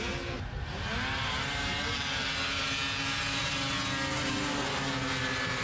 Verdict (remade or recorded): recorded